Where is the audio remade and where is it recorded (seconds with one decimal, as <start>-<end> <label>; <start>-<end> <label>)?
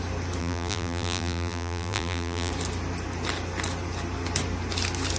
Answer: 0.0-0.4 recorded; 0.4-2.5 remade; 2.5-5.2 recorded